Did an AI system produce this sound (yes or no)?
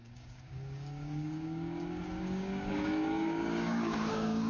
yes